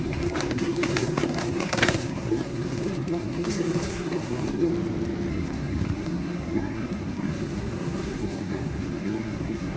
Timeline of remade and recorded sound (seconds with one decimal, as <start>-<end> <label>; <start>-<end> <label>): 0.0-4.7 remade; 4.7-5.3 recorded; 5.3-9.8 remade